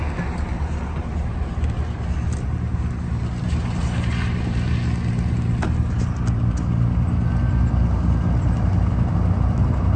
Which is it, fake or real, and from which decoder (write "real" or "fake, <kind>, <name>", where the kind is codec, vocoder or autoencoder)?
real